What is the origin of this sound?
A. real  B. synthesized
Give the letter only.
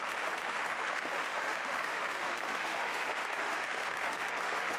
B